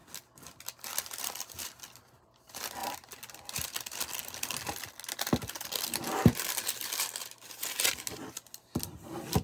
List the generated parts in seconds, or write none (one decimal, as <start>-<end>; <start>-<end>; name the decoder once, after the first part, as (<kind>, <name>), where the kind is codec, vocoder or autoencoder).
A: none